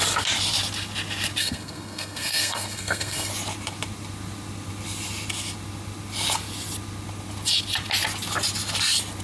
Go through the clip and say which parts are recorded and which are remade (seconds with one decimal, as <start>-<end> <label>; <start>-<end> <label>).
0.0-1.4 recorded; 1.4-3.3 remade; 3.3-9.2 recorded